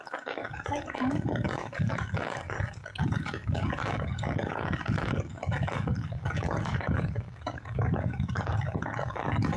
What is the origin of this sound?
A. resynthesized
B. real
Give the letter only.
A